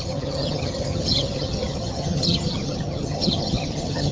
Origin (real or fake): fake